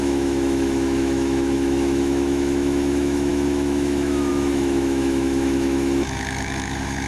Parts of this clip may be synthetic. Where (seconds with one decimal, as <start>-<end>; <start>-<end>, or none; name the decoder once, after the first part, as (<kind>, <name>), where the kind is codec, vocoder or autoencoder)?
0.0-7.1 (autoencoder, DAC-VAE)